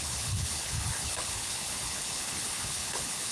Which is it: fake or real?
fake